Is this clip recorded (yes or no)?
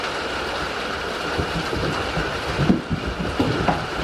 no